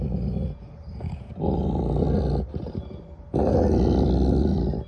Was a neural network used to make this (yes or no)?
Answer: no